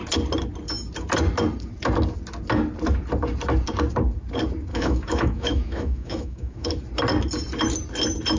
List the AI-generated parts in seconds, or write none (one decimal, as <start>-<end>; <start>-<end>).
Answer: 4.7-6.7